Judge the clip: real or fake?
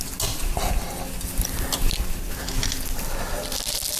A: real